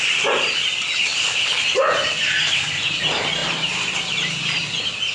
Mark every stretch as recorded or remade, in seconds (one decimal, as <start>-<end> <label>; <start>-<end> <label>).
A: 0.0-3.4 recorded; 3.4-4.4 remade; 4.4-5.1 recorded